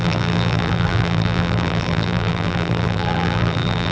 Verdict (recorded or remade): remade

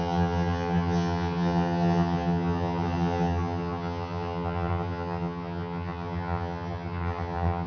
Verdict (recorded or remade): remade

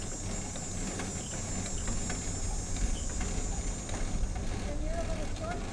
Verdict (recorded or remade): recorded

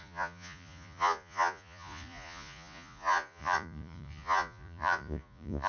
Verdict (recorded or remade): remade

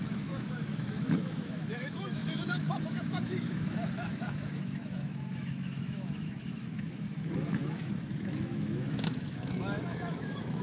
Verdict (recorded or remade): remade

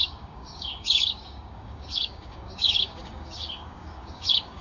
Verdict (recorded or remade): remade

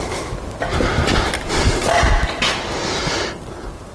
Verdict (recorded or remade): recorded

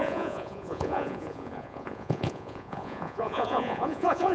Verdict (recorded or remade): remade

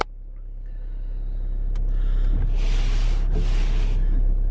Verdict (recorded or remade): recorded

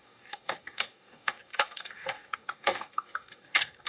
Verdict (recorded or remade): remade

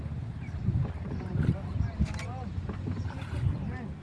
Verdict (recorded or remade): remade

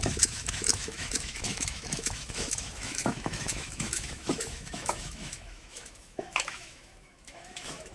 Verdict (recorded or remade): remade